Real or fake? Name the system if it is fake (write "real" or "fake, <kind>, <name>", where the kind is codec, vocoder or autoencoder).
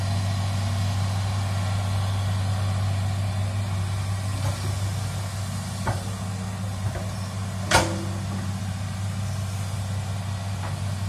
real